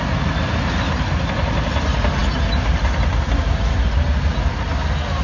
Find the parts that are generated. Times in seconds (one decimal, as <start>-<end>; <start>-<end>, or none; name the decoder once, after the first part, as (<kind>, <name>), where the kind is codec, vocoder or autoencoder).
none